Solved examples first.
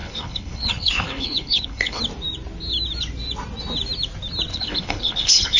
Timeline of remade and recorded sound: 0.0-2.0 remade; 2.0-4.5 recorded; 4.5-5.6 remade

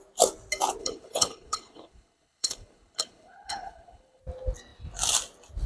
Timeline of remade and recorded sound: 0.0-0.8 recorded; 0.8-4.2 remade; 4.2-5.7 recorded

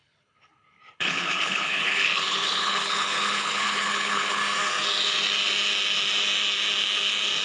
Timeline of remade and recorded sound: 0.0-4.4 remade; 4.4-7.4 recorded

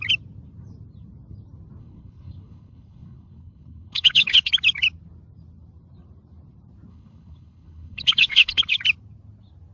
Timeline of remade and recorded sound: 0.0-1.8 recorded; 1.8-4.5 remade; 4.5-6.9 recorded; 6.9-8.8 remade; 8.8-9.7 recorded

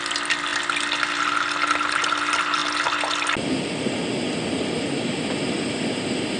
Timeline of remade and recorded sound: 0.0-6.4 recorded